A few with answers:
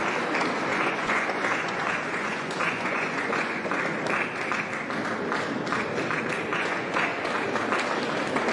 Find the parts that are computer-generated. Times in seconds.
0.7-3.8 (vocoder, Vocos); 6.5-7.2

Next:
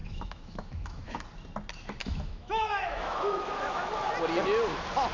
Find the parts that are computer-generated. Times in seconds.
0.0-1.2 (autoencoder, DAC-VAE); 2.0-3.9

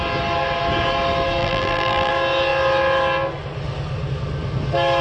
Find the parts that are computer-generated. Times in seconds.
1.4-2.1 (vocoder, BigVGAN v2)

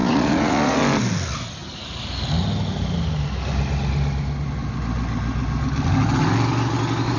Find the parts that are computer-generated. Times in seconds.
0.0-0.8 (vocoder, Vocos)